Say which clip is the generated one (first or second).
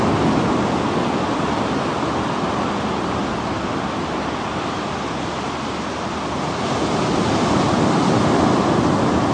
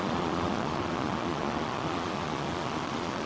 second